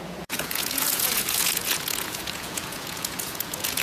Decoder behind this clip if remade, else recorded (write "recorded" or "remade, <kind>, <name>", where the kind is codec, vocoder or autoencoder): remade, vocoder, Vocos